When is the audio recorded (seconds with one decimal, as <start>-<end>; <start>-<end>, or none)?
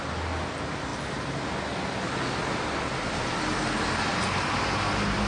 0.0-5.3